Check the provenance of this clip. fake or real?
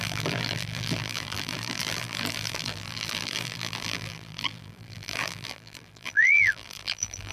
fake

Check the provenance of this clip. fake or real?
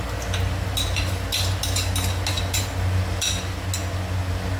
real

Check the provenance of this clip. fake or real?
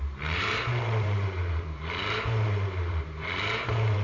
fake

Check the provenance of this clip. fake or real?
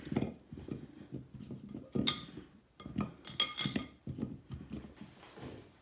real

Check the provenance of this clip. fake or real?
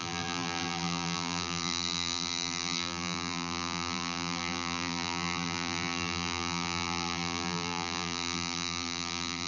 fake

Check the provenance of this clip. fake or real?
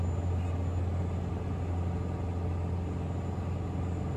real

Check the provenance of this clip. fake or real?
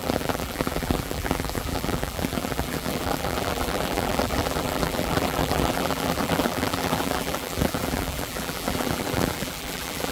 fake